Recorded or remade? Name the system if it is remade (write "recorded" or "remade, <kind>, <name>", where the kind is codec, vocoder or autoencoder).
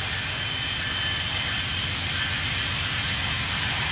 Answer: recorded